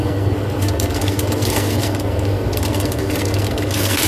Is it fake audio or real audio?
fake